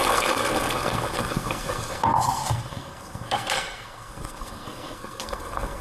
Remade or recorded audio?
remade